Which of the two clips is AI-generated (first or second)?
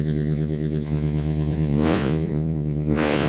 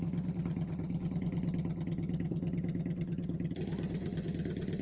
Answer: first